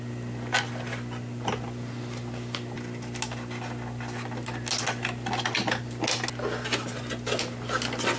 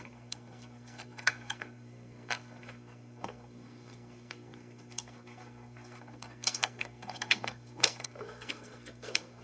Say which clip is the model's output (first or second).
second